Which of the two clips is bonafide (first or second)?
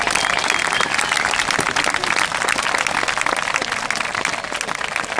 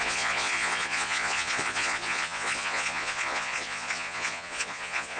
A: first